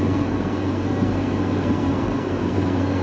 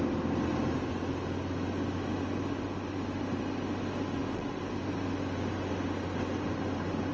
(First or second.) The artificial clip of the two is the first